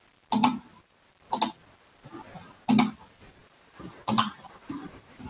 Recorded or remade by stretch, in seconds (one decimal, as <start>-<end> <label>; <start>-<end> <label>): 0.0-0.5 recorded; 0.5-1.1 remade; 1.1-3.4 recorded; 3.4-5.3 remade

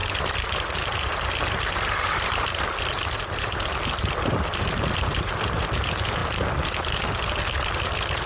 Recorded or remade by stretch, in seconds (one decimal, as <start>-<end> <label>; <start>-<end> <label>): 0.0-8.3 recorded

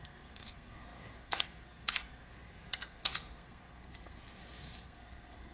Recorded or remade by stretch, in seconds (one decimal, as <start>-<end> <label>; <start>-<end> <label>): 0.0-5.5 remade

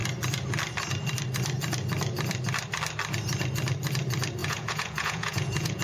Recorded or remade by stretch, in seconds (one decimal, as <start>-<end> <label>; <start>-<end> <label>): 0.0-4.4 recorded; 4.4-5.8 remade

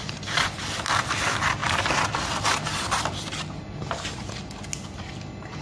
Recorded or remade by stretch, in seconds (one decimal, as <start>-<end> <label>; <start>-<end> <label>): 0.0-5.6 recorded

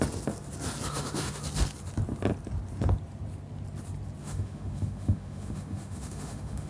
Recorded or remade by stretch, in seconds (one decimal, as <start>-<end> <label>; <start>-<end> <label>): 0.0-0.9 recorded; 0.9-1.4 remade; 1.4-4.2 recorded; 4.2-6.7 remade